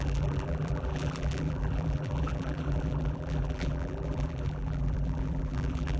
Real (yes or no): no